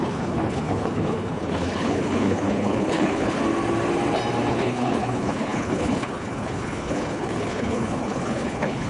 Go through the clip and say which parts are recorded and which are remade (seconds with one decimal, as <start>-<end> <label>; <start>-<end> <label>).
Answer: 0.0-3.4 remade; 3.4-4.5 recorded; 4.5-8.9 remade